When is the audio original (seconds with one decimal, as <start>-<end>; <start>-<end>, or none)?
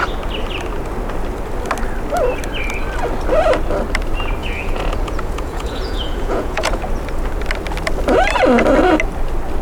0.0-4.4; 6.8-9.6